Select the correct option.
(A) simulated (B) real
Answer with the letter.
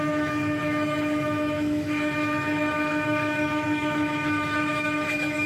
A